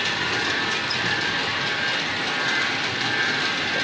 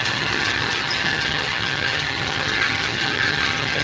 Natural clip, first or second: first